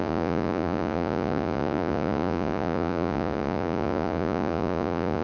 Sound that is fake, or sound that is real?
fake